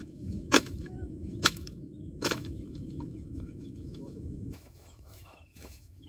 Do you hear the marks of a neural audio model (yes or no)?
yes